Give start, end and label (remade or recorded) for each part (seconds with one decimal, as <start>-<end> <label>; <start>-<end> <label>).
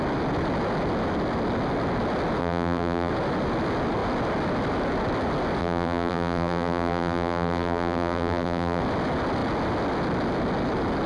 0.0-2.4 recorded; 2.4-3.1 remade; 3.1-5.6 recorded; 5.6-8.8 remade; 8.8-11.1 recorded